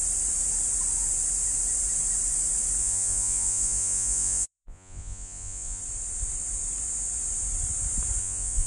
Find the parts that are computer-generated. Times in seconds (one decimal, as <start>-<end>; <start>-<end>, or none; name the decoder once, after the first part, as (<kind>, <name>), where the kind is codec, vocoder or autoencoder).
2.8-5.8 (vocoder, Vocos); 8.2-8.7